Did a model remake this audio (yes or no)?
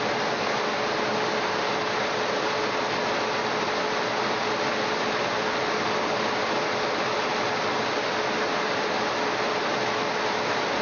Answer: no